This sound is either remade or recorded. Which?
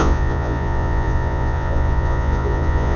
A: remade